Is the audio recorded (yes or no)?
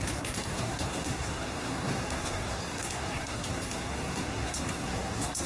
no